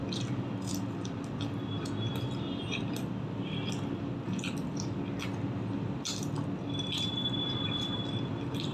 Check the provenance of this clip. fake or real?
real